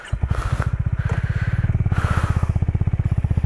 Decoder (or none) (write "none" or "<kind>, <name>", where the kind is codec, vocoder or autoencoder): none